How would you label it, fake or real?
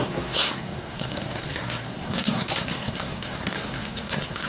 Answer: fake